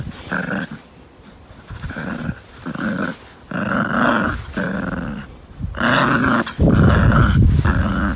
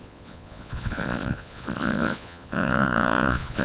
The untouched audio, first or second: first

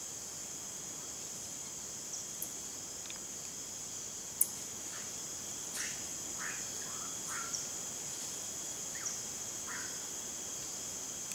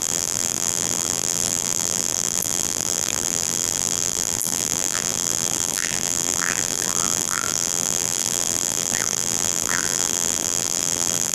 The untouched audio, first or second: first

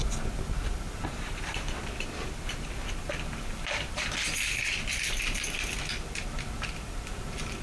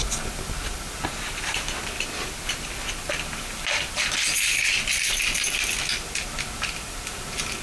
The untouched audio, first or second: second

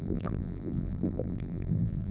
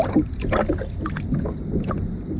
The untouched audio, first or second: second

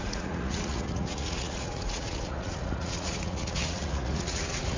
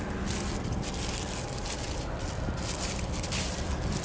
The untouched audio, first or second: second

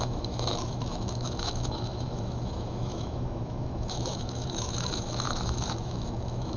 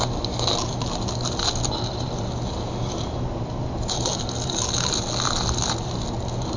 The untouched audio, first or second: second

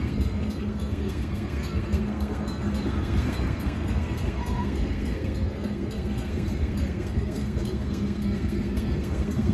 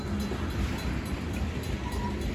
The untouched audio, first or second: second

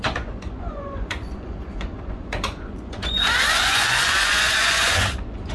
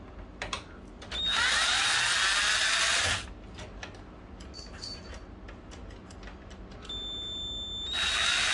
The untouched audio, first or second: second